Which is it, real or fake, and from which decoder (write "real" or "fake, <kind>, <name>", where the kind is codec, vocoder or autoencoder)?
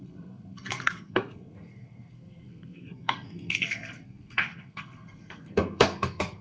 fake, codec, SNAC